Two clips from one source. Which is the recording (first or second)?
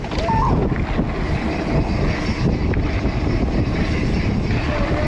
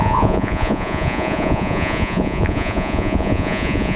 first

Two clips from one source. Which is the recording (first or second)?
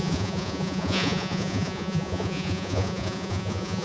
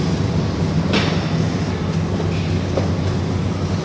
second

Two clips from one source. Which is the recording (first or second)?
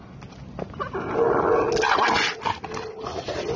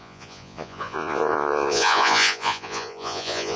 first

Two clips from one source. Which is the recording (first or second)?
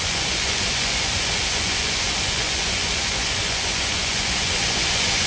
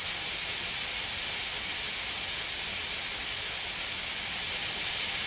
second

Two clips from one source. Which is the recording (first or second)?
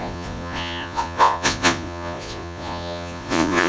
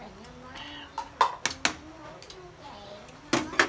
second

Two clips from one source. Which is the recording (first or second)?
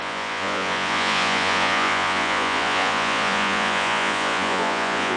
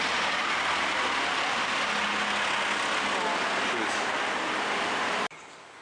second